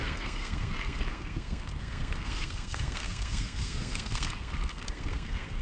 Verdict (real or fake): fake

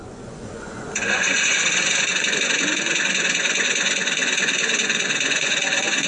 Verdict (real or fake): fake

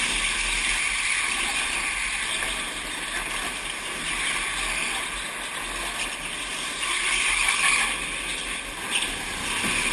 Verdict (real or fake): real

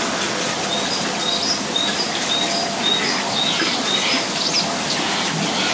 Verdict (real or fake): real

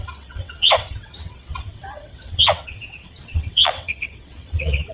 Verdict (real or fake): fake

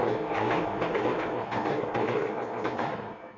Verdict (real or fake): fake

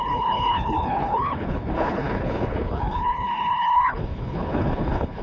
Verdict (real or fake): fake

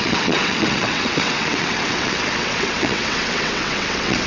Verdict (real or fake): fake